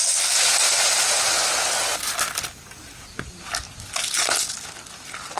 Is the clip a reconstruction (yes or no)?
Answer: no